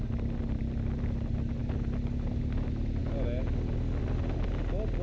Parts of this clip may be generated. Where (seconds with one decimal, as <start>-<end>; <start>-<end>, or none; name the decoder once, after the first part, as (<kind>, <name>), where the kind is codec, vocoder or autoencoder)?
none